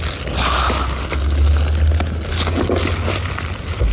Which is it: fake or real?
real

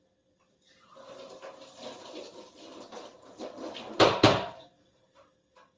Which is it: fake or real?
real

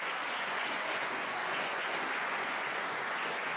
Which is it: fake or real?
fake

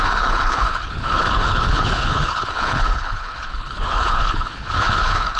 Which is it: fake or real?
fake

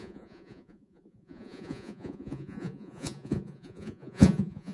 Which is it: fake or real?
fake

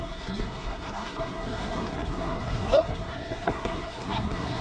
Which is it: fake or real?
fake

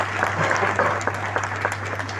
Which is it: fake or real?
real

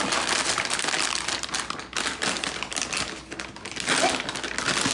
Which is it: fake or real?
real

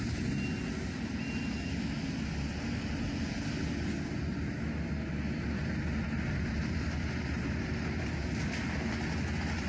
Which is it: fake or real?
real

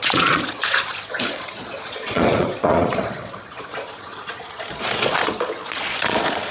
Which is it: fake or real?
fake